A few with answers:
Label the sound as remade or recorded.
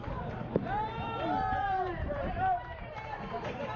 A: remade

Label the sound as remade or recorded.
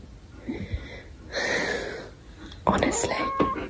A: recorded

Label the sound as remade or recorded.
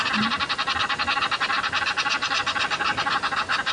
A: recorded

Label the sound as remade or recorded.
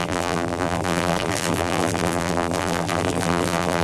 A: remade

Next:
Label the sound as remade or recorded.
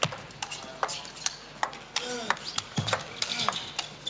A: recorded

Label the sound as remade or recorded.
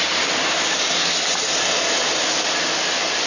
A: recorded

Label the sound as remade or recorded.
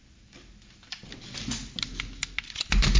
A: recorded